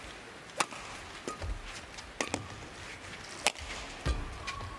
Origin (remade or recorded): recorded